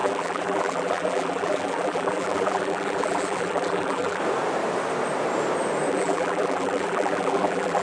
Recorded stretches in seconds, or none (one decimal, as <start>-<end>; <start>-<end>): 4.2-5.9